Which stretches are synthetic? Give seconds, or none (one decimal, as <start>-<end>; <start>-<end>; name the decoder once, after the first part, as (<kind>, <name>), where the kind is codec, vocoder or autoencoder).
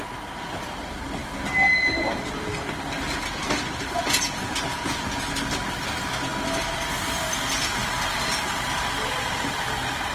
4.7-5.2 (vocoder, Vocos)